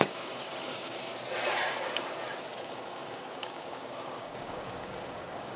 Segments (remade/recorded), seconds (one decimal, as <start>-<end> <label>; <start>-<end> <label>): 0.0-1.1 remade; 1.1-2.6 recorded; 2.6-5.6 remade